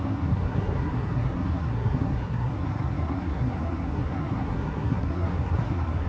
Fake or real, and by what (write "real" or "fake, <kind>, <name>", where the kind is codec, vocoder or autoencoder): fake, codec, SNAC